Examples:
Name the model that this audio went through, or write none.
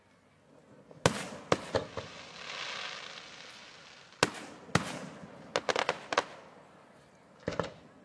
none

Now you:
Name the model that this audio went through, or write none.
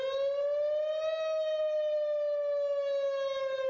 none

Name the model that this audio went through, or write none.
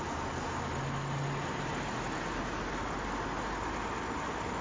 none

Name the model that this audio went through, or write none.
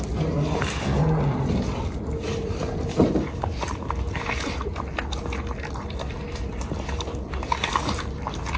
none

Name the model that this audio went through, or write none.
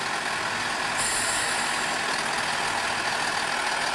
none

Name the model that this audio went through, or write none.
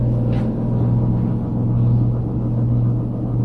none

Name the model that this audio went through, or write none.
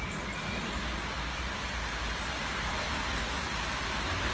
none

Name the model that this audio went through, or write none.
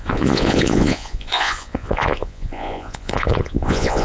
vocoder, Vocos